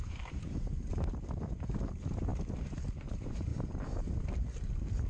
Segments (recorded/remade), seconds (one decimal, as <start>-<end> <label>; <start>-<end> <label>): 0.0-0.9 remade; 0.9-1.5 recorded; 1.5-2.3 remade; 2.3-3.1 recorded; 3.1-3.5 remade; 3.5-4.2 recorded; 4.2-5.1 remade

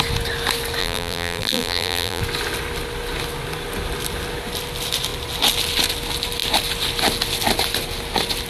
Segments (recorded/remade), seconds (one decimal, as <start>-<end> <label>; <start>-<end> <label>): 0.0-0.8 recorded; 0.8-2.2 remade; 2.2-8.5 recorded

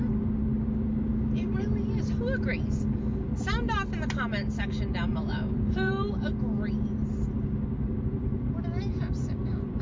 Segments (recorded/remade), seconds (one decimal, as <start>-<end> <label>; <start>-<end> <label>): 0.0-5.1 recorded; 5.1-6.2 remade; 6.2-9.8 recorded

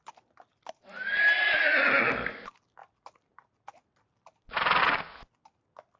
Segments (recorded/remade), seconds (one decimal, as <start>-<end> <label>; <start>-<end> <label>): 0.0-6.0 recorded

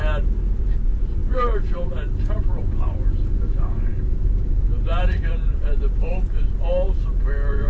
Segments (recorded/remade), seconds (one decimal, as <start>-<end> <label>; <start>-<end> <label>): 0.0-0.6 recorded; 0.6-7.7 remade

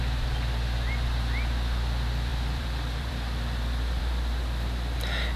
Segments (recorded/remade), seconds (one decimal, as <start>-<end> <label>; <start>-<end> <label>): 0.0-2.3 recorded; 2.3-4.0 remade; 4.0-5.4 recorded

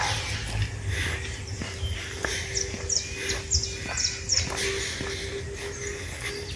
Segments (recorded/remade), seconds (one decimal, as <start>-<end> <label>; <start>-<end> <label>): 0.0-6.6 recorded